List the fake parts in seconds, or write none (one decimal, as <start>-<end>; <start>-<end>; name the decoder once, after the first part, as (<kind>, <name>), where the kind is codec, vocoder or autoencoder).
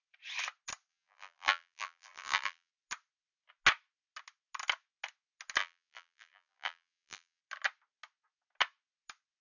0.9-2.7 (vocoder, BigVGAN v2); 5.6-7.4